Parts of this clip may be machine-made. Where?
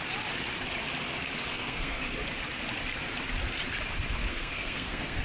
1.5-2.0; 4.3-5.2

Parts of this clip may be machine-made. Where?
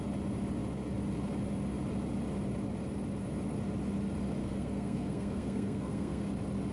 4.4-6.3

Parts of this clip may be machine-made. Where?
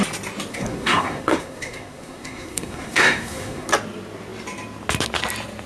0.5-3.7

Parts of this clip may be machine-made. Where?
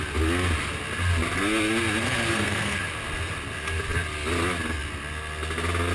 2.0-2.8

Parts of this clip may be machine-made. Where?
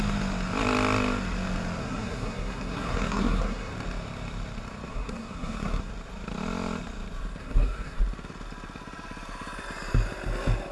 1.8-3.7; 4.9-5.9; 7.4-8.0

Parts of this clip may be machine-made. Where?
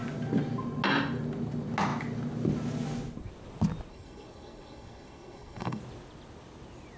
3.9-5.8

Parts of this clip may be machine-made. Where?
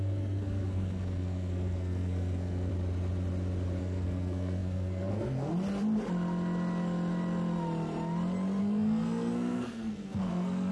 0.0-2.7; 3.8-5.5; 8.6-10.7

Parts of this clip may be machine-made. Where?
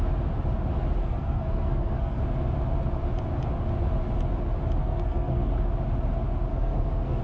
1.0-2.2; 4.8-5.5; 6.5-7.2